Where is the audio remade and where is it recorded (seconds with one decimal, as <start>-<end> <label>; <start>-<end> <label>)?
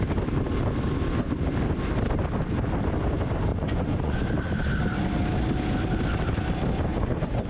0.0-3.5 recorded; 3.5-4.2 remade; 4.2-6.9 recorded; 6.9-7.5 remade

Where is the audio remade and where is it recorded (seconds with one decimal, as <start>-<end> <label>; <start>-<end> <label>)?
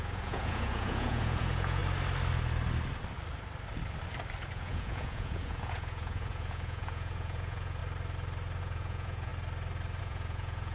0.0-1.8 remade; 1.8-4.5 recorded; 4.5-7.8 remade; 7.8-8.6 recorded; 8.6-9.3 remade; 9.3-10.0 recorded; 10.0-10.7 remade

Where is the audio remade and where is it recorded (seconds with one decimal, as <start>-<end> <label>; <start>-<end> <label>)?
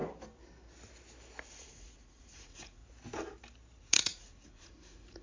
0.0-1.5 recorded; 1.5-2.8 remade; 2.8-3.8 recorded; 3.8-5.2 remade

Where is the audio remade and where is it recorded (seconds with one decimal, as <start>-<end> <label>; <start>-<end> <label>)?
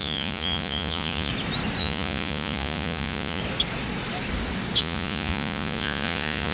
0.0-1.3 remade; 1.3-1.8 recorded; 1.8-3.4 remade; 3.4-4.8 recorded; 4.8-6.5 remade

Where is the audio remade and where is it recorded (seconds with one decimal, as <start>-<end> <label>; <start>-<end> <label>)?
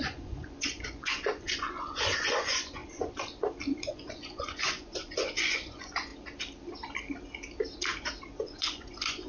0.0-2.8 remade; 2.8-3.9 recorded; 3.9-6.1 remade; 6.1-8.4 recorded; 8.4-9.3 remade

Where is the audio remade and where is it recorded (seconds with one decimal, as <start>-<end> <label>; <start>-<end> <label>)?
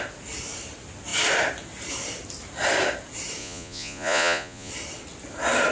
0.0-3.4 recorded; 3.4-4.7 remade; 4.7-5.7 recorded